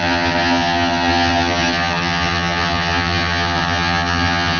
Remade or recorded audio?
remade